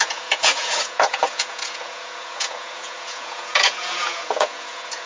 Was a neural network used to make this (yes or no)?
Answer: yes